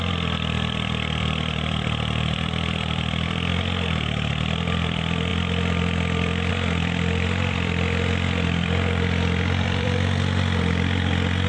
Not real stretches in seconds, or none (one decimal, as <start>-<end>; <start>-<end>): 0.0-3.5; 4.3-11.5